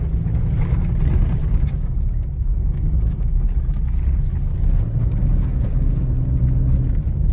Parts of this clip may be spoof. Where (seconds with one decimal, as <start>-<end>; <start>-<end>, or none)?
1.4-3.3; 4.5-6.4